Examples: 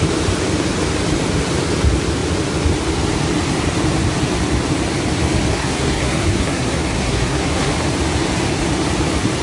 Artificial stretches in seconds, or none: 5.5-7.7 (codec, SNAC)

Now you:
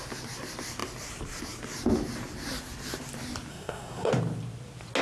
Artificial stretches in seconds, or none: 3.5-4.1 (codec, SNAC)

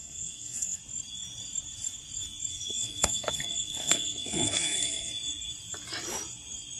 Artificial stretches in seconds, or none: 0.0-0.8 (codec, SNAC); 2.5-5.1

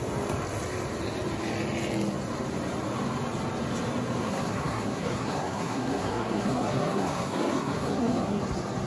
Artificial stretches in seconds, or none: 4.2-8.4 (codec, SNAC)